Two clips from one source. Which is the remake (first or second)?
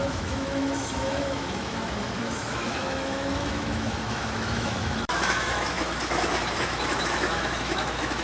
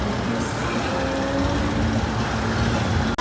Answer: first